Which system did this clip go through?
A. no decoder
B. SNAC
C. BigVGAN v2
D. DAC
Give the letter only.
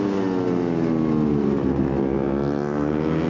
A